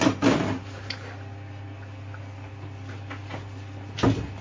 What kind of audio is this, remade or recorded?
recorded